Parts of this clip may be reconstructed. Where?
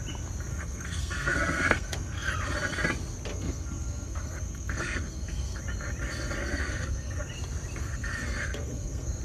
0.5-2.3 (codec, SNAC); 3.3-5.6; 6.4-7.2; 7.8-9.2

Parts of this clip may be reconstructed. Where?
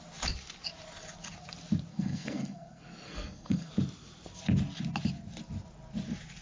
1.9-3.7 (codec, SNAC)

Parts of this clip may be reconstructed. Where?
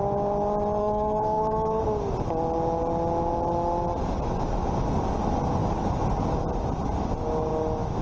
0.8-1.8 (codec, SNAC)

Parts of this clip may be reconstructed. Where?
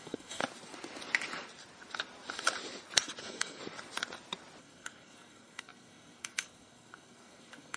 0.0-0.4 (codec, SNAC); 3.2-3.6; 4.6-7.8